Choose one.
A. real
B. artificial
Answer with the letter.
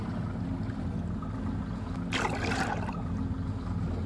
A